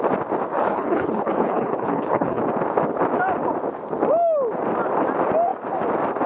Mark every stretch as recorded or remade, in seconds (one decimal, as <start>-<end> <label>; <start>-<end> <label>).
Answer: 0.0-0.5 recorded; 0.5-2.4 remade; 2.4-6.3 recorded